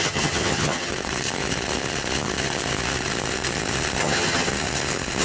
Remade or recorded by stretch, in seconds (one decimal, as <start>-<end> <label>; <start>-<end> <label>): 0.0-0.9 remade; 0.9-4.0 recorded; 4.0-4.5 remade; 4.5-5.2 recorded